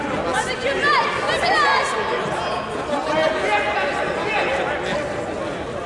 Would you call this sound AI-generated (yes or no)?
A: no